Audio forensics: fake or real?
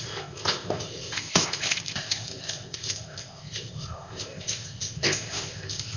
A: fake